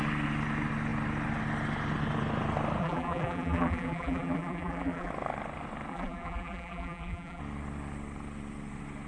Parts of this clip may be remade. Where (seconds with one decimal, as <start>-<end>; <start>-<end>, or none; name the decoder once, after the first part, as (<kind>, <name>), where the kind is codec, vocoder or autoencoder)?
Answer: 2.8-5.1 (vocoder, BigVGAN v2); 5.9-7.4